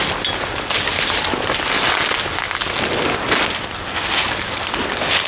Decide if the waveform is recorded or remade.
recorded